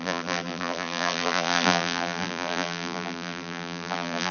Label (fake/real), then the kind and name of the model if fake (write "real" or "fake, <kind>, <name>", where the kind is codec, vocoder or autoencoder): fake, vocoder, BigVGAN v2